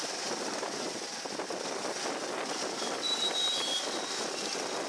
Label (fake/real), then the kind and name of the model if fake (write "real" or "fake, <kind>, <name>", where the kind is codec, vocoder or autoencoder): fake, vocoder, BigVGAN v2